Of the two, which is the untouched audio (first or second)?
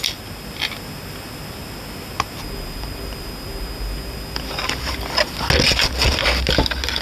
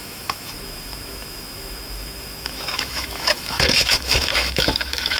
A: first